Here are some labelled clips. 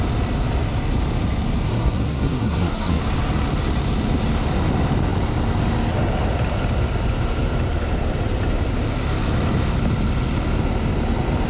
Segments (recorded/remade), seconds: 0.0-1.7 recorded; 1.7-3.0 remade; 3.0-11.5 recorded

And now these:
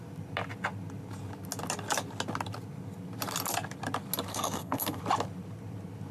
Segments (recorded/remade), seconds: 0.0-4.3 recorded; 4.3-5.0 remade; 5.0-6.1 recorded